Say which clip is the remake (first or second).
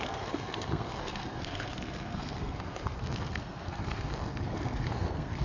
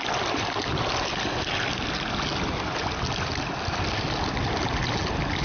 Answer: first